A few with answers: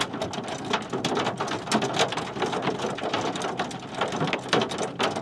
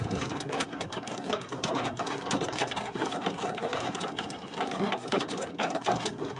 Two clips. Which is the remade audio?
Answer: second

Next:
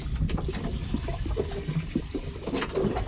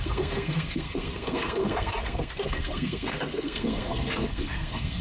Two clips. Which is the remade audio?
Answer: second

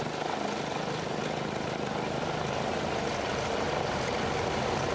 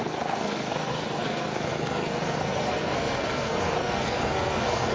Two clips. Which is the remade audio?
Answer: second